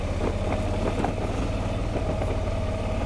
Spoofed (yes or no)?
no